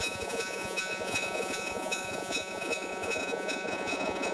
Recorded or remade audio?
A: remade